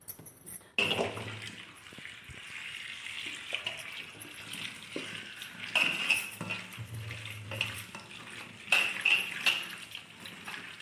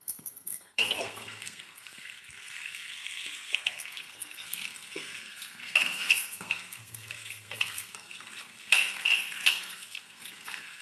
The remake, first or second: second